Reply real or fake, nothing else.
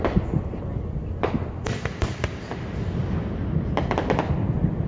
real